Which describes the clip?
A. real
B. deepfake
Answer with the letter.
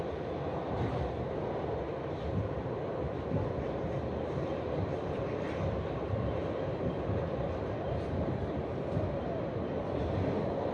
A